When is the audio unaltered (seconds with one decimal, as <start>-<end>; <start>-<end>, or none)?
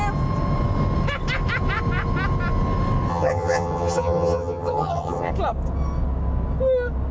0.0-3.1; 5.3-7.1